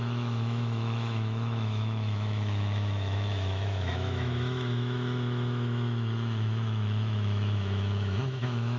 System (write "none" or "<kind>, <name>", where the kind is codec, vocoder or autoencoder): autoencoder, DAC-VAE